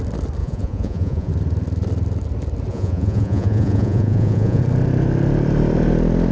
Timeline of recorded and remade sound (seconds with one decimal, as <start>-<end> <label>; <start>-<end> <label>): 0.0-0.4 recorded; 0.4-1.3 remade; 1.3-2.7 recorded; 2.7-4.6 remade; 4.6-6.3 recorded

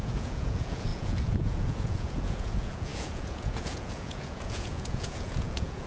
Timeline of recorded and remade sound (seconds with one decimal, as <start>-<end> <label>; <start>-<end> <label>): 0.0-5.9 remade

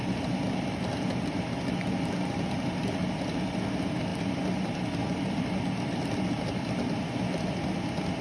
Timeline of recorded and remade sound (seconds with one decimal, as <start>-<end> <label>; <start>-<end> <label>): 0.0-8.2 recorded